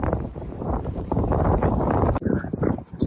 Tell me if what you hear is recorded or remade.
remade